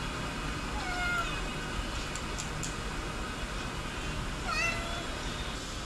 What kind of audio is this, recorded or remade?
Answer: recorded